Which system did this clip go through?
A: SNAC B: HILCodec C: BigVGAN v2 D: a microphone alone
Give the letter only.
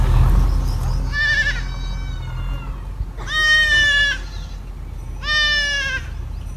D